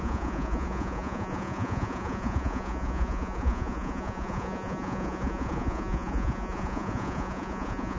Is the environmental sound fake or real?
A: fake